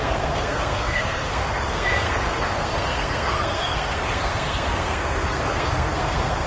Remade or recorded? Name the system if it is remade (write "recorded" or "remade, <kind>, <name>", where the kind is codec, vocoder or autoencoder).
remade, codec, SNAC